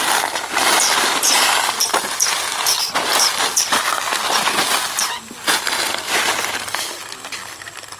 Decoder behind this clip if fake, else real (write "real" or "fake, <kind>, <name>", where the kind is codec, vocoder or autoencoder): real